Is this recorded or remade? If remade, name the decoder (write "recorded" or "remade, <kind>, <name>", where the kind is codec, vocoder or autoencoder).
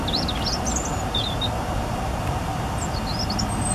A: recorded